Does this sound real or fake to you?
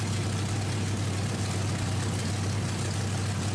real